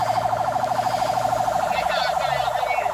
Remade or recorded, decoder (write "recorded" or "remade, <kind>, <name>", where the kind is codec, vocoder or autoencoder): recorded